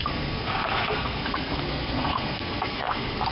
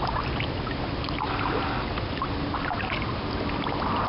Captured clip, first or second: second